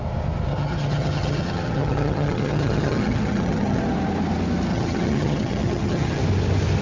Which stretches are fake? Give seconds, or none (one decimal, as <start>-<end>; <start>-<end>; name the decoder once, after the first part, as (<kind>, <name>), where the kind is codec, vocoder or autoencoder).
0.5-3.8 (vocoder, HiFi-GAN); 4.7-6.2